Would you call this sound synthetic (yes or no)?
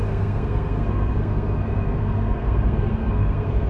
yes